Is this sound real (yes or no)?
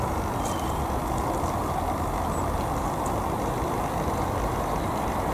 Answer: yes